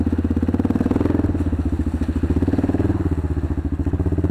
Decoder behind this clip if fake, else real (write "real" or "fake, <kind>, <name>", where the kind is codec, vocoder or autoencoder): real